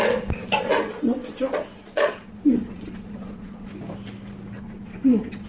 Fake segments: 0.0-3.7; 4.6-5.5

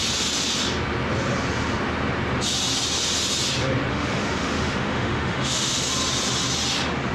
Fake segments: 3.9-5.8

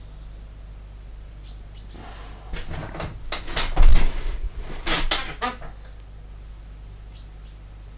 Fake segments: none

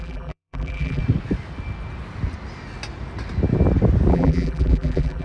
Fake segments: 0.0-1.0; 4.1-5.2

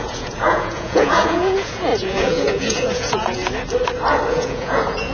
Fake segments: 0.0-3.4; 4.3-5.1

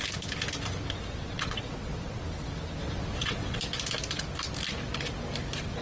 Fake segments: 1.1-2.2; 2.8-3.6